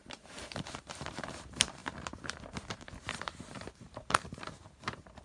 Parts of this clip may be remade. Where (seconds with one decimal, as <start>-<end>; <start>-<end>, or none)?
0.0-5.2